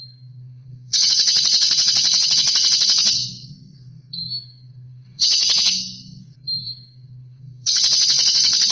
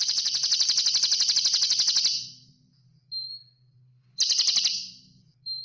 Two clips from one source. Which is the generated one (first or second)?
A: first